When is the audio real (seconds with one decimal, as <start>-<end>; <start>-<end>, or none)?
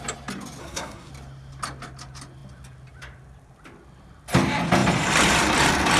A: 0.0-0.6; 1.1-6.0